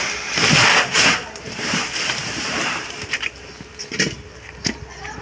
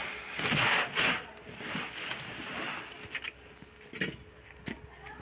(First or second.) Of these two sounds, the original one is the second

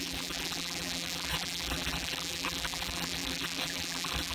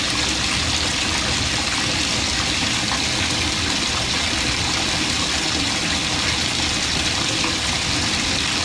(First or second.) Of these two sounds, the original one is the second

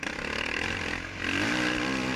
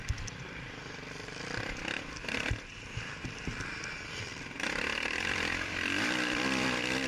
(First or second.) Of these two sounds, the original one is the first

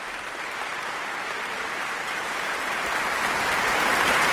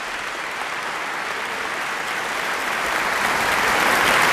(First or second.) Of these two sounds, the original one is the second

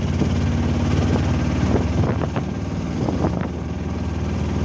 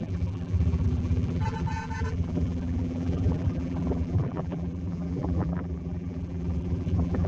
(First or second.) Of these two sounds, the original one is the first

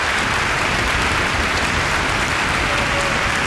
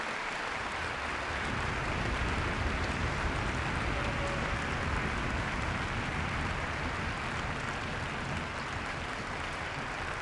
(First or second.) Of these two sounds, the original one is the second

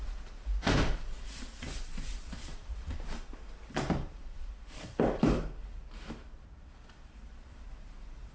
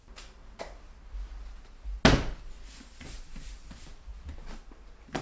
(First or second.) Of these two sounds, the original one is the second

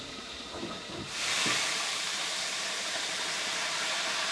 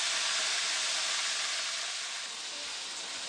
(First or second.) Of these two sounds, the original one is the second